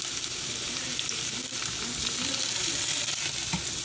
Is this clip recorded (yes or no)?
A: yes